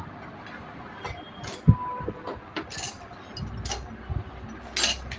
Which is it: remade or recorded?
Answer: recorded